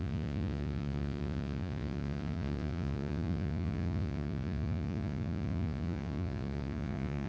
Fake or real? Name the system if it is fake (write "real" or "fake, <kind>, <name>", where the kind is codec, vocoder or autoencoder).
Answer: fake, vocoder, Vocos